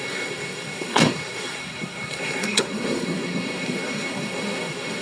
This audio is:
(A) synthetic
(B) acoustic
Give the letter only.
A